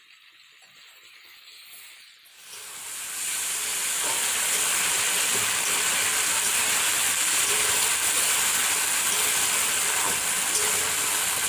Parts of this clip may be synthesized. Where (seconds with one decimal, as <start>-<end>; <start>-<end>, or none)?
0.0-8.6